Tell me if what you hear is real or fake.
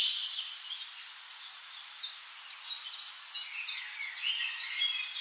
real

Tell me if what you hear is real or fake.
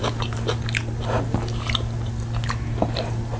real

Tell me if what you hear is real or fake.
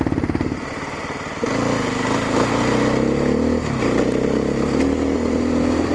real